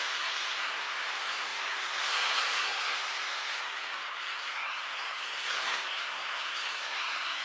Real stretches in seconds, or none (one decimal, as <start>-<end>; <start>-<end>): none